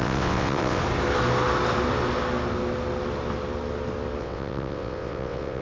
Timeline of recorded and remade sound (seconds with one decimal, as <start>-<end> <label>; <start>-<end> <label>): 0.0-0.8 remade; 0.8-4.2 recorded; 4.2-5.6 remade

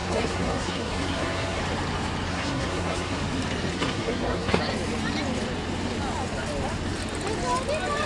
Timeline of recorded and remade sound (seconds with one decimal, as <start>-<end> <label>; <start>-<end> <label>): 0.0-1.6 remade; 1.6-2.3 recorded; 2.3-3.2 remade; 3.2-3.7 recorded; 3.7-4.6 remade; 4.6-8.1 recorded

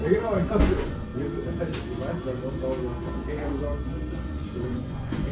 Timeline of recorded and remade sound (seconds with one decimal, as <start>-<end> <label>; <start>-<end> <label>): 0.0-1.1 remade; 1.1-4.3 recorded; 4.3-5.3 remade

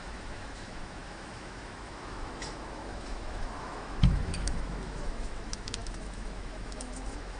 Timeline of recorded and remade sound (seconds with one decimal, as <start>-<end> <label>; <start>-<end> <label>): 0.0-7.4 remade

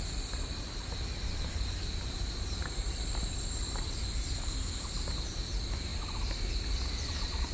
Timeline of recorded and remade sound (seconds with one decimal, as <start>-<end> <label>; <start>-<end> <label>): 0.0-7.5 recorded

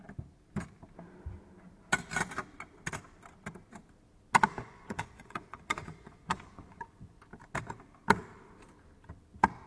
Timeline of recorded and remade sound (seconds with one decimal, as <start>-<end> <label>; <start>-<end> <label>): 0.0-4.5 recorded; 4.5-7.2 remade; 7.2-9.7 recorded